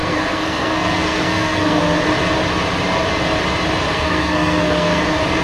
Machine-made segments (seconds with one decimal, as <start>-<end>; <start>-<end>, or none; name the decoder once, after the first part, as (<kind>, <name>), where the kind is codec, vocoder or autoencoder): 0.0-1.8 (codec, SNAC); 3.9-5.0